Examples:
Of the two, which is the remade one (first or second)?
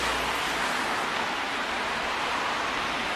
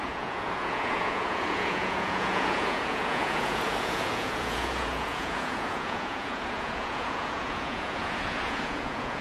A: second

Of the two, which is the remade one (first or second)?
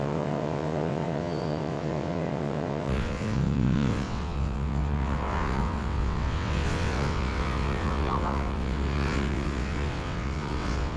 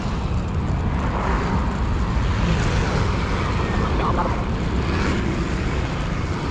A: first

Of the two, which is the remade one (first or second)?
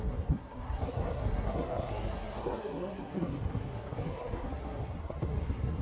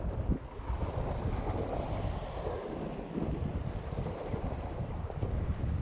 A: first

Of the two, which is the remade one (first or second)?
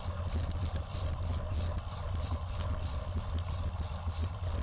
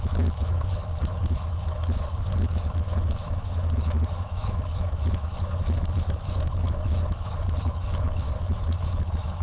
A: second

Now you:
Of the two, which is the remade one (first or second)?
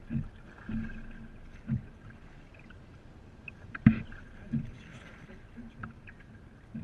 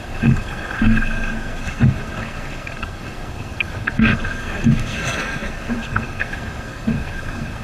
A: second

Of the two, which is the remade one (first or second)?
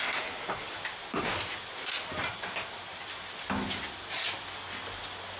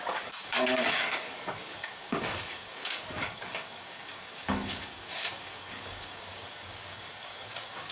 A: second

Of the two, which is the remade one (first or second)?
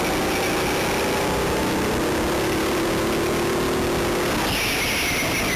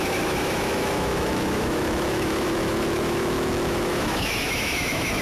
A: second